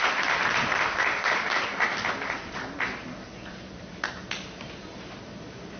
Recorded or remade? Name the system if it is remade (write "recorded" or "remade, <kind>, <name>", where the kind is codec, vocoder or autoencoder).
recorded